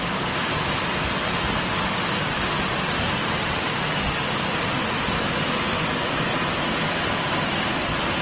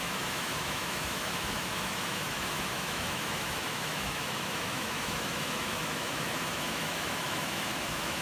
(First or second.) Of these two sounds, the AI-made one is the second